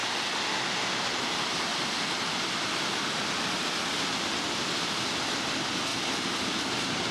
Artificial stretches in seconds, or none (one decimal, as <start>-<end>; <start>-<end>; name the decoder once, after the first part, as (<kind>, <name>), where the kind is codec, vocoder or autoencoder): 1.7-2.3 (vocoder, BigVGAN v2); 5.9-7.1